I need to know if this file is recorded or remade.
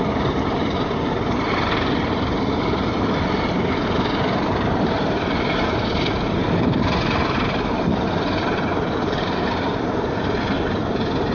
remade